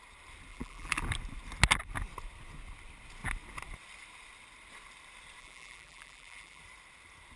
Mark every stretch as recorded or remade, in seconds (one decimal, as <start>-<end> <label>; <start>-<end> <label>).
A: 0.0-0.5 recorded; 0.5-1.0 remade; 1.0-5.4 recorded; 5.4-6.6 remade; 6.6-7.4 recorded